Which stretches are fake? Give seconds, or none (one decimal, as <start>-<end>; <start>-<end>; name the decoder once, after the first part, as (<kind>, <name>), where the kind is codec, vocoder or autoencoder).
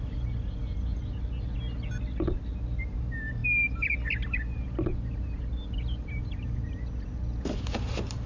none